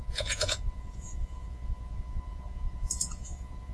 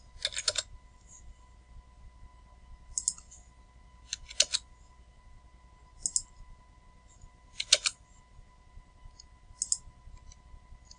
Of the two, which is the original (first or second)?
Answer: second